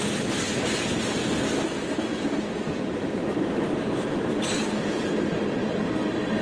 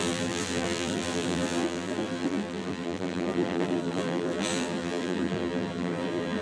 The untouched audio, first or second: first